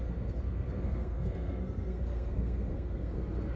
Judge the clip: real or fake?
fake